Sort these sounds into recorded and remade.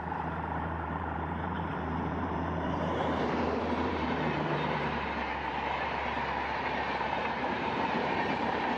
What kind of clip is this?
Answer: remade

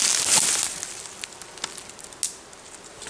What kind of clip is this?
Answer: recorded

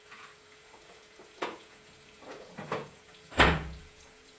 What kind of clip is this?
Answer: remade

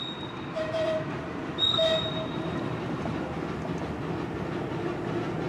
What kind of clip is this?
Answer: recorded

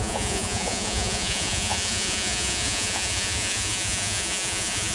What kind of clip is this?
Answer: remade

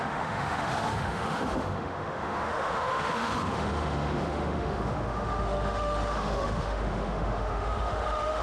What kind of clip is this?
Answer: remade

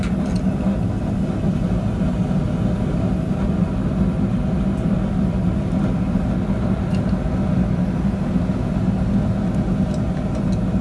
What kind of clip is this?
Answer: recorded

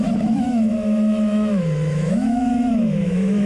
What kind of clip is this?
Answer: remade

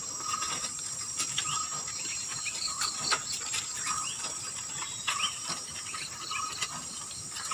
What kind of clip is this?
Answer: remade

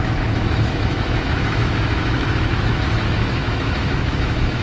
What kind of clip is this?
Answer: remade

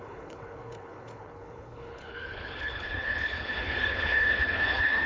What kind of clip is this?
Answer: remade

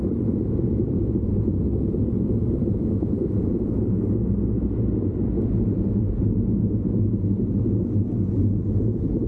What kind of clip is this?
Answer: recorded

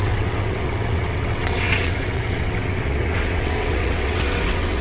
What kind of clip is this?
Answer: remade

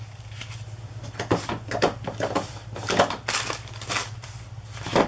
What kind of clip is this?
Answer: recorded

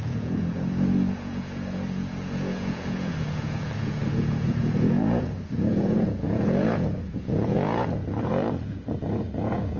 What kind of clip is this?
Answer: remade